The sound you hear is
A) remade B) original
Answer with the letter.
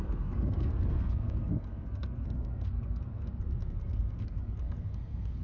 A